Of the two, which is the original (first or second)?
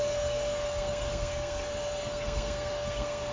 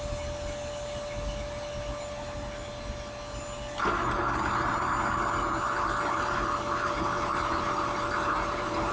second